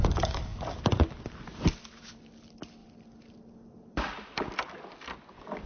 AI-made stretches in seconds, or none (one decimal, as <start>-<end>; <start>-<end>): none